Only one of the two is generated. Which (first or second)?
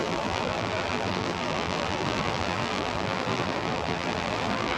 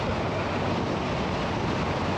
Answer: first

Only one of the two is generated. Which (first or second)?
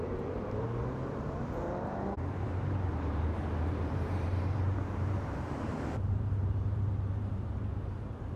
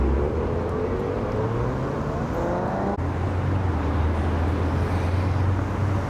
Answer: first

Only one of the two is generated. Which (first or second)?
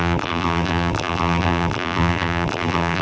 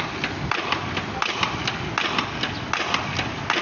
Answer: first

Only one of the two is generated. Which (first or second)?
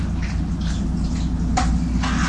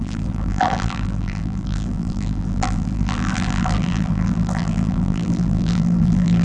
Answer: second